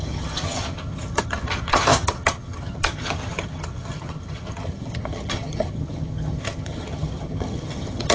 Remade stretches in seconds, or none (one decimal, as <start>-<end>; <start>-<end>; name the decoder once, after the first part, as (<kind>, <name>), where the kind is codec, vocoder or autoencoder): 0.0-8.1 (vocoder, HiFi-GAN)